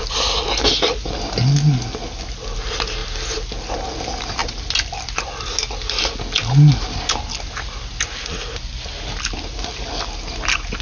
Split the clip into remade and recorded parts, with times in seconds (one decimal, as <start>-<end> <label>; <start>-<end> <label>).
0.0-10.8 recorded